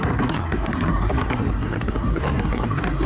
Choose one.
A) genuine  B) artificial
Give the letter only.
B